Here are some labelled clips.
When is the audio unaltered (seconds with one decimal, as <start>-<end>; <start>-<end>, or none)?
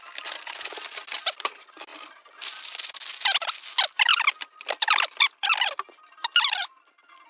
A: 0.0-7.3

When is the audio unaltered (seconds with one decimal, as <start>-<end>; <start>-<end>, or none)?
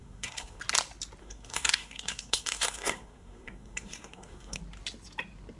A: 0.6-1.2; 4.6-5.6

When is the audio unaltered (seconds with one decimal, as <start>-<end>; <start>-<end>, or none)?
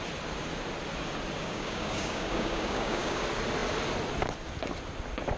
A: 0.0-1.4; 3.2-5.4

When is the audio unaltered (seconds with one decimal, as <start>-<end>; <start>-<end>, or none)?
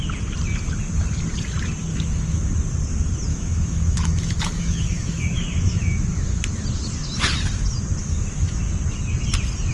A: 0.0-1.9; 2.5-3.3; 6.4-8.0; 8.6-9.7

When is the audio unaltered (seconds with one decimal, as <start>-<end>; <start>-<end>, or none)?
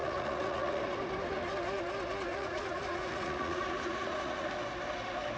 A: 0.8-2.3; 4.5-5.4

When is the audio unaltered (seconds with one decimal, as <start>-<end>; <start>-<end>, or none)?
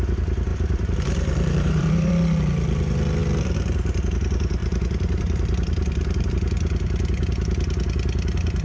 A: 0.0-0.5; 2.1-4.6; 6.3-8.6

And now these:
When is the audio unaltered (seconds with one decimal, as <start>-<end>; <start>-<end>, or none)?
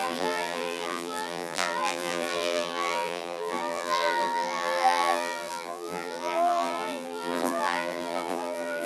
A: none